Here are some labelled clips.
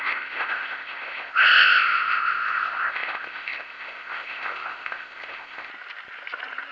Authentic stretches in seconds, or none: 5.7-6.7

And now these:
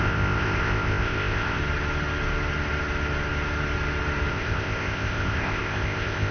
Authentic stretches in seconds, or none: 1.6-4.3

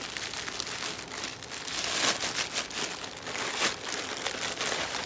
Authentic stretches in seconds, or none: 0.0-5.1

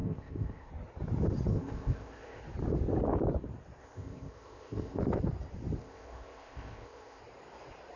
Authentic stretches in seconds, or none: 0.7-1.5; 2.4-3.8; 5.0-5.8; 7.2-8.0